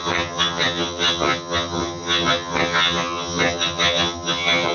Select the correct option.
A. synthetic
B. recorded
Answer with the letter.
A